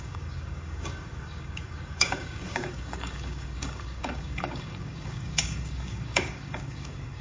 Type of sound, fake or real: fake